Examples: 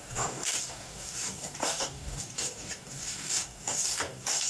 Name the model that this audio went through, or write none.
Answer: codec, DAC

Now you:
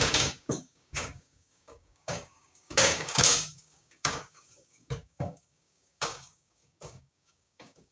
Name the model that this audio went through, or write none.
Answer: codec, DAC